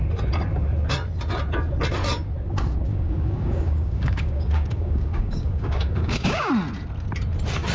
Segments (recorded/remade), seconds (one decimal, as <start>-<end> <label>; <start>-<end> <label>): 0.0-2.9 recorded; 2.9-6.5 remade; 6.5-7.7 recorded